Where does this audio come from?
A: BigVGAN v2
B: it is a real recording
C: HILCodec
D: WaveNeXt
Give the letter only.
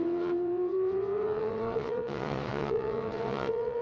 D